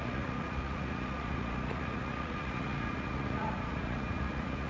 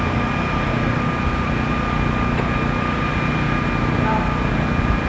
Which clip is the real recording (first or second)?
second